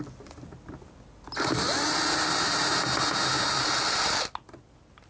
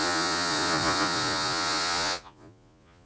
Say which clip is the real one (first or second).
first